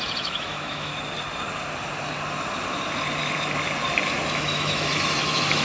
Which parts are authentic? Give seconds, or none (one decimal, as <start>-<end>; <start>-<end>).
0.9-4.3